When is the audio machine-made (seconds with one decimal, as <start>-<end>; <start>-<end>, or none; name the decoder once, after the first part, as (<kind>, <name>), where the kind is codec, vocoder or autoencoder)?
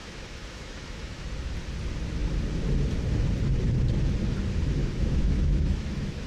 0.0-1.3 (autoencoder, DAC-VAE); 4.8-6.3